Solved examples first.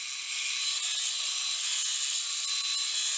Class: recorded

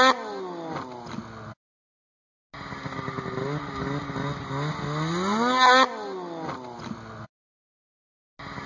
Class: recorded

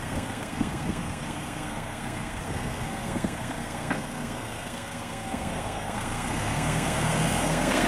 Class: remade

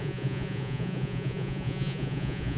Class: remade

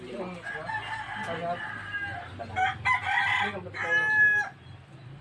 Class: recorded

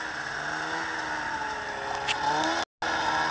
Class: recorded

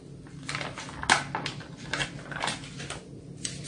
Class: recorded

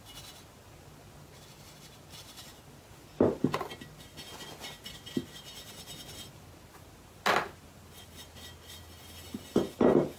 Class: recorded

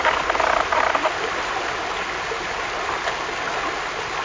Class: recorded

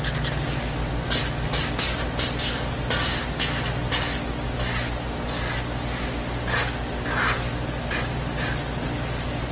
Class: recorded